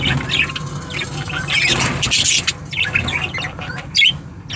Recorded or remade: recorded